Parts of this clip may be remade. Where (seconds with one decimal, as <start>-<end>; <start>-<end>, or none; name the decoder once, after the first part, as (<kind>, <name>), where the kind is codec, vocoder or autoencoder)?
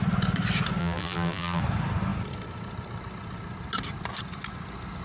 0.8-1.6 (vocoder, BigVGAN v2)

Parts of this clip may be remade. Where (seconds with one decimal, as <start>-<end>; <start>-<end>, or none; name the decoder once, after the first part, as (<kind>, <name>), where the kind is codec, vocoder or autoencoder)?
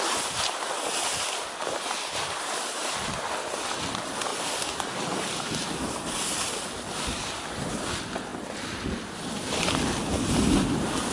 none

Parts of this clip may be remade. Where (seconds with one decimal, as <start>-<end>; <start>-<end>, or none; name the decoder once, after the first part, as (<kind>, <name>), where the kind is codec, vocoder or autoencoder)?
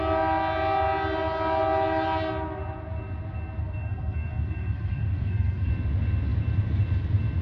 3.6-5.7 (codec, SNAC)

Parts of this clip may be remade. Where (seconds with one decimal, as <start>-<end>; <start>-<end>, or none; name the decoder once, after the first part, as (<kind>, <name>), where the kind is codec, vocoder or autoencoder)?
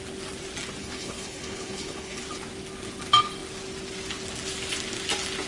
0.8-2.2 (codec, HILCodec)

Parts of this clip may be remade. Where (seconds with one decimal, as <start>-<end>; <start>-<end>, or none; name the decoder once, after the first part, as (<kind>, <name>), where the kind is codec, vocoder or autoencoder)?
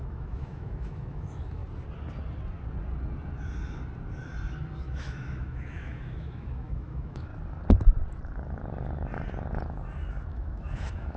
0.0-1.6 (autoencoder, DAC-VAE); 4.8-7.3; 10.3-11.2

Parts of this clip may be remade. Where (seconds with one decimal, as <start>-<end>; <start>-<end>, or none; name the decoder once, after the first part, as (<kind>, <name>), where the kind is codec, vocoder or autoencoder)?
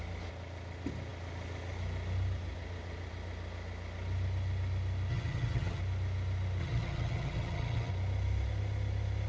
5.1-5.8 (vocoder, HiFi-GAN); 6.6-7.9